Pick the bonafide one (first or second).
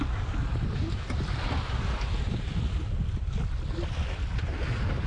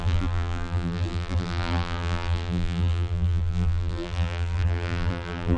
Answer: first